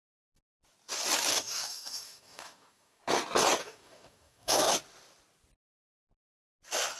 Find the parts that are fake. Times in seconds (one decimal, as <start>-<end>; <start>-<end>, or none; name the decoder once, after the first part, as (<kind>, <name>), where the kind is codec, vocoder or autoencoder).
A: 1.3-3.0 (codec, DAC); 3.6-4.7